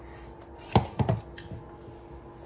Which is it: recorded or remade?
recorded